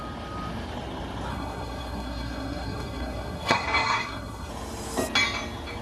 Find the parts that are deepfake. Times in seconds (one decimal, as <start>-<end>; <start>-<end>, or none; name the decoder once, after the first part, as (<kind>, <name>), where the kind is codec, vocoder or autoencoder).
1.3-4.5 (codec, SNAC)